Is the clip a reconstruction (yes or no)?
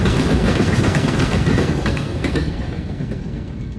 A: yes